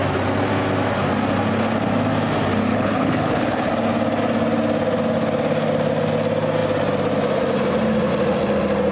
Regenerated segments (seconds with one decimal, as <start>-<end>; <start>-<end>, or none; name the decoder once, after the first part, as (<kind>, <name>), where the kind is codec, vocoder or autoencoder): 2.7-3.7 (codec, HILCodec)